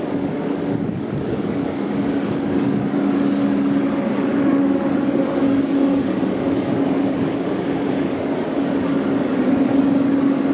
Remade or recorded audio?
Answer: remade